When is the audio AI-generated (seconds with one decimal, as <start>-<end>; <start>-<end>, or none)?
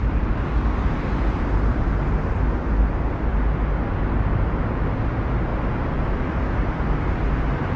none